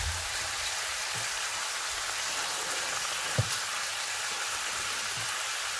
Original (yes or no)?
yes